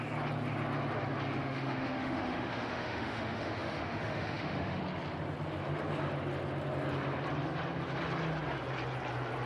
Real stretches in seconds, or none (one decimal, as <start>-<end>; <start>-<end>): 0.0-1.4; 4.8-9.5